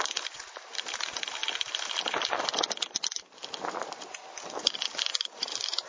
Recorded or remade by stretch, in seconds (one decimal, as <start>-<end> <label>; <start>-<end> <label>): 0.0-1.4 remade; 1.4-3.7 recorded; 3.7-5.9 remade